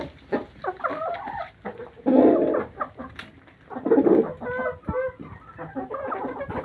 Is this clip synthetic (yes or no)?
no